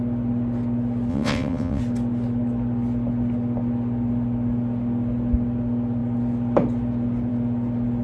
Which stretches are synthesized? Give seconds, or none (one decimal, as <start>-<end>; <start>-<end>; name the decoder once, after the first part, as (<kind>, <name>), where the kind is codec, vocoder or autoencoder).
1.1-1.8 (vocoder, WaveNeXt)